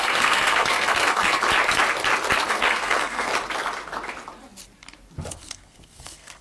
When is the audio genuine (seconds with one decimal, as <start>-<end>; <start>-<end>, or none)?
1.4-2.5; 3.3-5.3